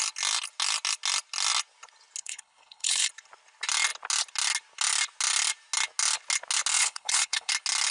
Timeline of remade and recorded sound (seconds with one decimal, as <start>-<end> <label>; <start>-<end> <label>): 0.0-2.2 recorded; 2.2-3.1 remade; 3.1-6.8 recorded; 6.8-7.5 remade; 7.5-7.9 recorded